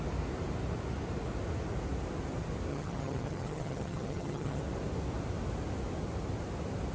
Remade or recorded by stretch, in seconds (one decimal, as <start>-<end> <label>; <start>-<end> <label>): 0.0-2.7 recorded; 2.7-4.6 remade; 4.6-6.9 recorded